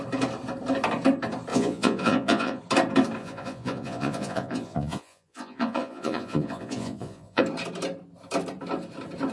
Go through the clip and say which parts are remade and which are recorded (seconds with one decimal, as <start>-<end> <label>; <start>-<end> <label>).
0.0-1.5 recorded; 1.5-2.6 remade; 2.6-3.2 recorded; 3.2-7.4 remade; 7.4-9.3 recorded